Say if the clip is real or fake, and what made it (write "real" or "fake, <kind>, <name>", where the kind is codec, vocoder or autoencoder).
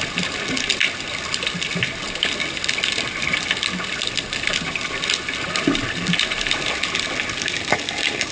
real